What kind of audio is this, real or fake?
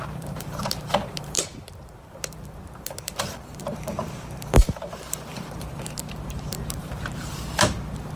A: fake